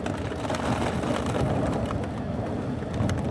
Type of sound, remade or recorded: recorded